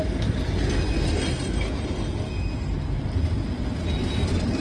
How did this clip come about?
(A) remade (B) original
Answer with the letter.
B